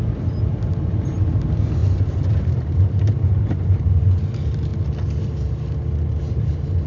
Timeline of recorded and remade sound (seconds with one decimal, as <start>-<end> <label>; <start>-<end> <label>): 0.0-1.8 recorded; 1.8-3.9 remade; 3.9-6.9 recorded